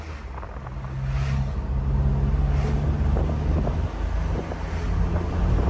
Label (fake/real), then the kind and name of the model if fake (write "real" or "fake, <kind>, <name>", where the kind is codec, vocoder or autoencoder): real